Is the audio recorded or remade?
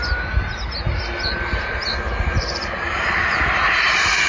recorded